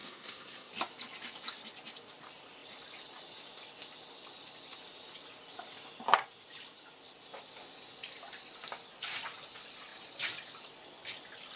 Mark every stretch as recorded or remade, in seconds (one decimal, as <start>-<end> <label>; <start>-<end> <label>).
0.0-0.7 remade; 0.7-11.6 recorded